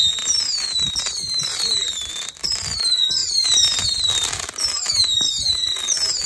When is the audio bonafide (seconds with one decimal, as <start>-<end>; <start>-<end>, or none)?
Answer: 0.0-0.5; 2.3-3.2; 4.5-6.3